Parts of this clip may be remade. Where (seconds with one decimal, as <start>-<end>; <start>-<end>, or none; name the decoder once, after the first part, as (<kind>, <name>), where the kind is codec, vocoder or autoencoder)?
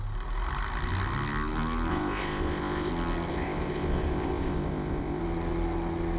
1.9-2.9 (codec, ZipCodec); 3.3-5.2